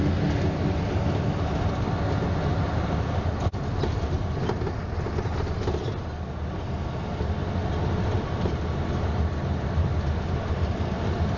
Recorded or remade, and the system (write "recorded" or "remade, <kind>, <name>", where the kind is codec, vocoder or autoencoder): recorded